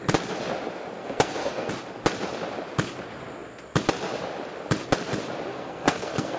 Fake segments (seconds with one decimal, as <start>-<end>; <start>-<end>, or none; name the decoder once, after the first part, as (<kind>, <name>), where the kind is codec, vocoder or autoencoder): 1.0-1.7 (codec, SNAC); 5.5-6.4